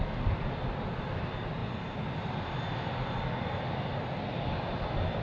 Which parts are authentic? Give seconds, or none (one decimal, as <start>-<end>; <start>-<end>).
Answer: 0.0-5.2

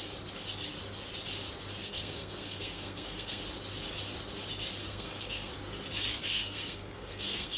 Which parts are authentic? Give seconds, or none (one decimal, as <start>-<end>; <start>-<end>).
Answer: 0.0-1.8; 3.4-4.8; 5.5-6.1

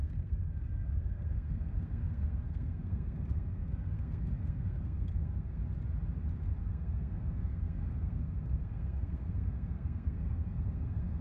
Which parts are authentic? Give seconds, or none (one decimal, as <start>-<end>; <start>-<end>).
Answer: 5.6-6.6

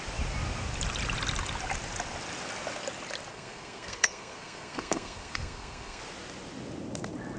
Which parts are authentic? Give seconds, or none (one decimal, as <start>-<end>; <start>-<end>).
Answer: 0.0-3.3; 6.0-7.4

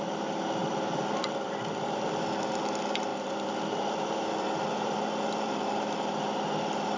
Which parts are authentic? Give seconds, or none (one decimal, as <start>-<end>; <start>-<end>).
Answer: 0.0-0.6; 2.5-3.1; 5.5-7.0

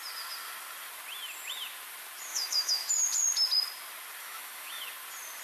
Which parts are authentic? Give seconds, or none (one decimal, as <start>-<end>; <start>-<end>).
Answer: 0.0-2.3; 2.9-4.2; 4.9-5.4

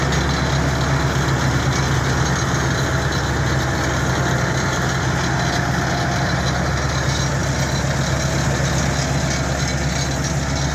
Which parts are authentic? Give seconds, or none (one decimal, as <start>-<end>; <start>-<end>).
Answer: 0.0-10.7

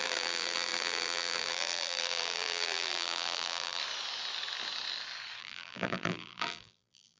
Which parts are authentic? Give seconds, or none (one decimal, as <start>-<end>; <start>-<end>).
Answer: 3.8-5.4